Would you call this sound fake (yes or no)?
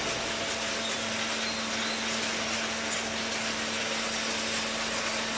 no